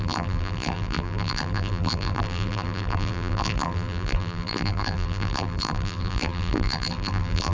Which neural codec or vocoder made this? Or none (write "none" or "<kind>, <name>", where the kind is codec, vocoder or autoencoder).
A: vocoder, BigVGAN v2